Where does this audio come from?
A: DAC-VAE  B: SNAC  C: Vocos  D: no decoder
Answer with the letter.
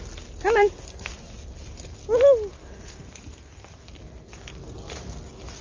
D